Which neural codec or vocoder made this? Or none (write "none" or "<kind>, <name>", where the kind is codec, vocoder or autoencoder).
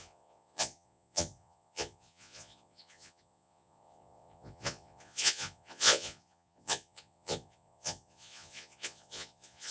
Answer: vocoder, Vocos